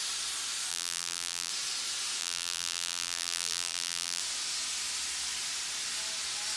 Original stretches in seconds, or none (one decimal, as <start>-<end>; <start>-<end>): 0.0-0.7; 1.5-2.2; 4.2-6.6